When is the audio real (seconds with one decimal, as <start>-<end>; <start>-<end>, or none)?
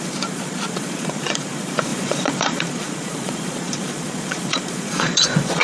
none